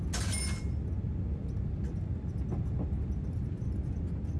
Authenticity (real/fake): real